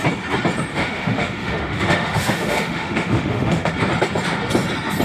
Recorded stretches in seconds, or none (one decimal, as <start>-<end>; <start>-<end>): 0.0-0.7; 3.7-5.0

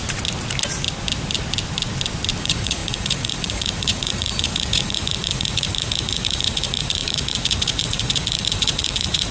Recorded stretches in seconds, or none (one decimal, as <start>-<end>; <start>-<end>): 0.0-2.4

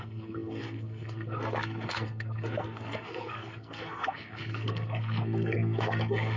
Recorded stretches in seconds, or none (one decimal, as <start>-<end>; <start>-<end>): none

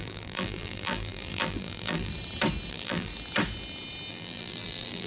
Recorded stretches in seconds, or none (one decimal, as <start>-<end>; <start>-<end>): 2.1-2.7; 3.1-4.1

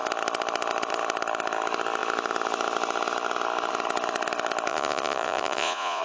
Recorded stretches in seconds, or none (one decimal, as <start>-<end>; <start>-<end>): 0.0-4.7

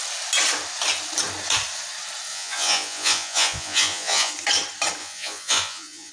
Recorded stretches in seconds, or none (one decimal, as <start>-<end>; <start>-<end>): 0.0-2.3; 4.3-5.0

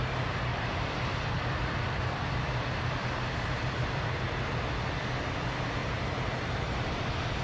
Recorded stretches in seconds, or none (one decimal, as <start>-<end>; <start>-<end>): 0.0-0.5; 4.6-5.8; 7.0-7.4

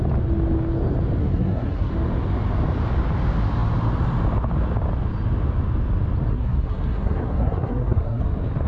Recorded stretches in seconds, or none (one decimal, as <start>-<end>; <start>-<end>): 0.0-1.2; 1.9-6.3; 8.2-8.7